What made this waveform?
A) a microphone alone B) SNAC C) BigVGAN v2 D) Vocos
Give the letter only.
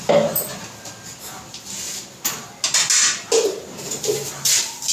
A